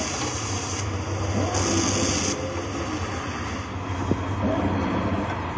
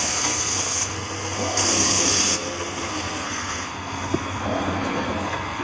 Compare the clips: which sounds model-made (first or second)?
second